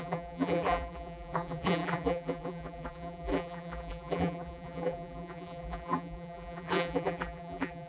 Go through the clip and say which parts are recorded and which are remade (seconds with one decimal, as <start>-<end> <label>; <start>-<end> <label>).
0.0-7.9 remade